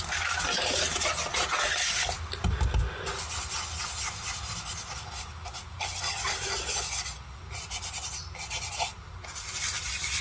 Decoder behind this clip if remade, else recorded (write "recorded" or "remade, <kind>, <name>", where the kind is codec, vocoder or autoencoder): recorded